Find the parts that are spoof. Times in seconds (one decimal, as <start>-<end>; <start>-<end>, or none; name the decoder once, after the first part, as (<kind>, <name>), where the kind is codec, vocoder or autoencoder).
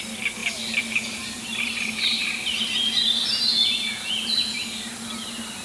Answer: 3.5-4.1 (vocoder, Vocos)